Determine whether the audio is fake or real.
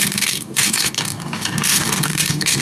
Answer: fake